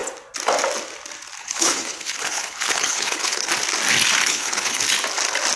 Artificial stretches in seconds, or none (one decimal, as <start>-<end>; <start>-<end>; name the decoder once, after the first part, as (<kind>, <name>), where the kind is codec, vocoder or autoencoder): 1.4-3.5 (codec, HILCodec); 4.2-4.8